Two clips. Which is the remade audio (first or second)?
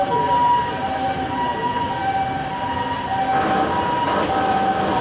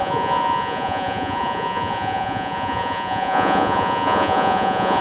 second